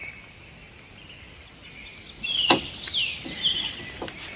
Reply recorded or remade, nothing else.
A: recorded